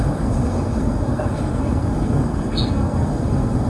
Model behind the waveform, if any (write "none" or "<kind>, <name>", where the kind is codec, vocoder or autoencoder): codec, SNAC